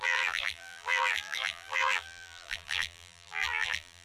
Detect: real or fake fake